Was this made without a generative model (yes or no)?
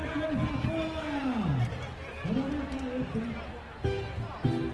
yes